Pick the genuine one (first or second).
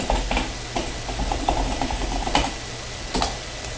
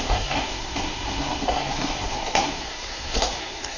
first